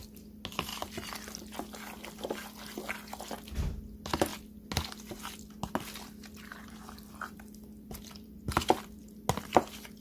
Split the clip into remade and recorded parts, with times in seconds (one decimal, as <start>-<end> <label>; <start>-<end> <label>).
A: 0.0-0.7 recorded; 0.7-1.4 remade; 1.4-6.5 recorded; 6.5-9.0 remade; 9.0-10.0 recorded